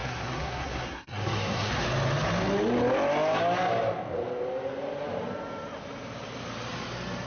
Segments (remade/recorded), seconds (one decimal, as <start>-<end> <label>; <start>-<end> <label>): 0.0-1.7 remade; 1.7-7.3 recorded